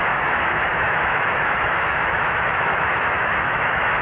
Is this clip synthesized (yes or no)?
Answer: yes